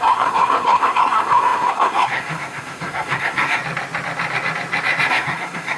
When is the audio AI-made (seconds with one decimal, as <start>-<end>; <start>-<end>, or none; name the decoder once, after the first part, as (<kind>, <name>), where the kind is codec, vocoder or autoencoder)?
0.0-3.6 (codec, SNAC); 5.1-5.8